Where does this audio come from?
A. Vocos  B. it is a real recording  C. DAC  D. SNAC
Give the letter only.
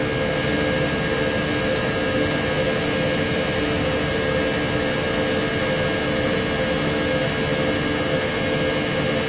B